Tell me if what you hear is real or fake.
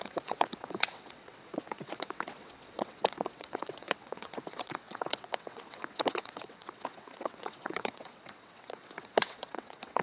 fake